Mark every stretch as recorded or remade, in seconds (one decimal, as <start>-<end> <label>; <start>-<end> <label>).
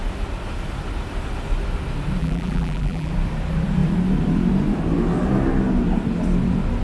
0.0-2.2 recorded; 2.2-3.1 remade; 3.1-6.8 recorded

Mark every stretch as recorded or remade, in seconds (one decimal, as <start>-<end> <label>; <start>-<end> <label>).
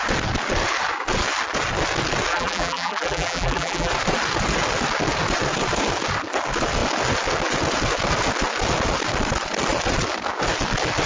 0.0-2.3 recorded; 2.3-3.9 remade; 3.9-11.1 recorded